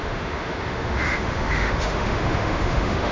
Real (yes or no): no